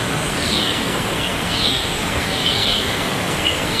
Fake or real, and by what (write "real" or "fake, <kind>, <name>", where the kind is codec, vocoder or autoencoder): fake, codec, SNAC